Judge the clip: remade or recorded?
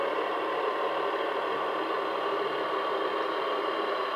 remade